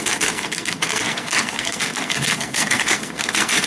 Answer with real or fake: fake